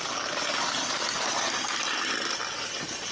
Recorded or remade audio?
recorded